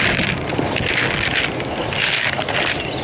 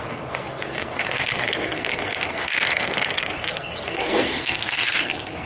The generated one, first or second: second